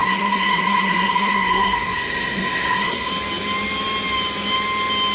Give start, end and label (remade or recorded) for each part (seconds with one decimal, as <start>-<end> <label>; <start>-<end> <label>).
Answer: 0.0-3.1 remade; 3.1-5.1 recorded